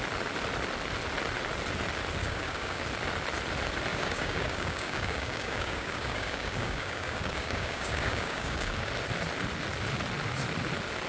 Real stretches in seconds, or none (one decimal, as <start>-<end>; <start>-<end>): 0.0-2.2; 2.8-3.9; 8.9-11.1